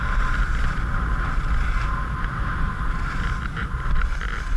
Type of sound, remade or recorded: recorded